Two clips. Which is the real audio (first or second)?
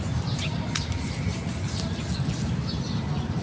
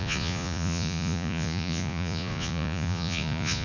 first